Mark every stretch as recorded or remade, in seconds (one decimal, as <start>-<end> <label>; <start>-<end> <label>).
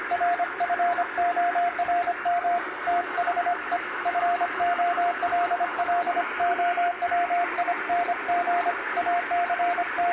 0.0-10.1 recorded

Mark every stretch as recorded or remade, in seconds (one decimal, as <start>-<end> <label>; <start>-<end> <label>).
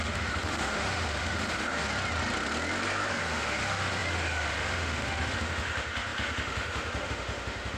0.0-1.9 remade; 1.9-3.2 recorded; 3.2-7.8 remade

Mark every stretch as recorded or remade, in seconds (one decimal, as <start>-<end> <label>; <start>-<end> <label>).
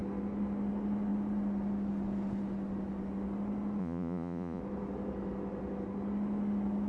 0.0-3.8 recorded; 3.8-4.6 remade; 4.6-6.9 recorded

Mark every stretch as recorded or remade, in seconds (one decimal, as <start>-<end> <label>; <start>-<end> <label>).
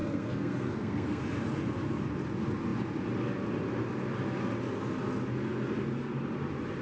0.0-1.2 remade; 1.2-6.8 recorded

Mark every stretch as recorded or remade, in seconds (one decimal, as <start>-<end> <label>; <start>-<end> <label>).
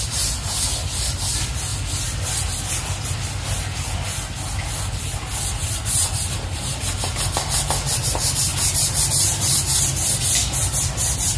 0.0-5.6 recorded; 5.6-6.6 remade; 6.6-8.5 recorded; 8.5-9.8 remade; 9.8-11.4 recorded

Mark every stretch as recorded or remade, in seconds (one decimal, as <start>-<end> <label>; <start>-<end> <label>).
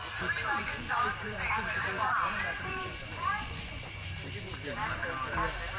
0.0-0.5 recorded; 0.5-4.0 remade; 4.0-5.8 recorded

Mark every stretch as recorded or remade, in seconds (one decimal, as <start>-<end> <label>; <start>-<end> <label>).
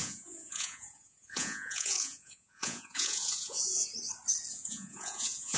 0.0-3.9 remade; 3.9-4.5 recorded; 4.5-5.6 remade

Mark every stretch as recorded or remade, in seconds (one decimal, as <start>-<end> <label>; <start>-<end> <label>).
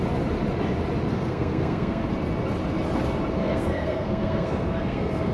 0.0-1.1 recorded; 1.1-2.1 remade; 2.1-3.4 recorded; 3.4-5.3 remade